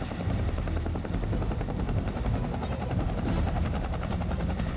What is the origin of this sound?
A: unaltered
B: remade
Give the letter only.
B